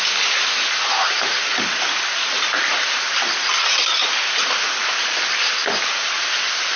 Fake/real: real